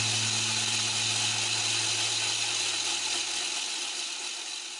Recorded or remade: recorded